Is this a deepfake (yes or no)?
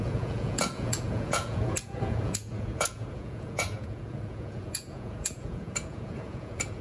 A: yes